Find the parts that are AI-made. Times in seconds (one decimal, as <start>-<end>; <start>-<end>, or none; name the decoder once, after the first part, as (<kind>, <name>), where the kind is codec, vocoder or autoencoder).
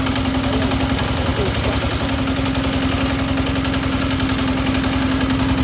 none